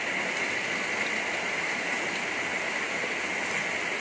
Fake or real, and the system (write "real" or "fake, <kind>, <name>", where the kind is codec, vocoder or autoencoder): real